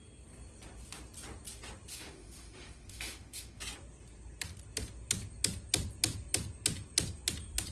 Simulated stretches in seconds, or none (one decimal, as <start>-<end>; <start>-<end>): 1.9-3.6